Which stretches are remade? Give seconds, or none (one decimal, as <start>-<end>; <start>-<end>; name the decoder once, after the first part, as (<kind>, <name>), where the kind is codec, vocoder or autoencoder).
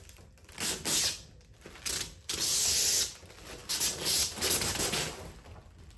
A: none